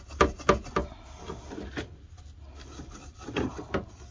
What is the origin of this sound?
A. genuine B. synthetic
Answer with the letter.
A